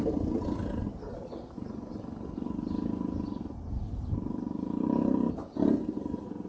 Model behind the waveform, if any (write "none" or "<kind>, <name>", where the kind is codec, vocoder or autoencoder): none